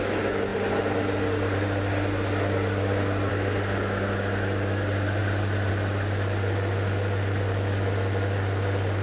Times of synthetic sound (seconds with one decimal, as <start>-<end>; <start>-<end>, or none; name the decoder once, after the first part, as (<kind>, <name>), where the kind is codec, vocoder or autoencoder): none